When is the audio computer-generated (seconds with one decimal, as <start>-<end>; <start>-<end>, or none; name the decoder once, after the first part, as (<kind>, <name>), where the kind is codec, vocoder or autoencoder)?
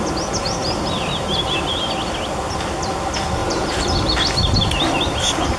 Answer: 0.6-1.9 (vocoder, BigVGAN v2); 3.4-4.2